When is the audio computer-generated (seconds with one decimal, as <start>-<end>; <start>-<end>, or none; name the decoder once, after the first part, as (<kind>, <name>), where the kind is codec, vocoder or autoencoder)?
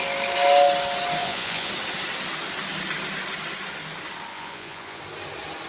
1.2-1.7 (vocoder, Vocos); 4.3-5.0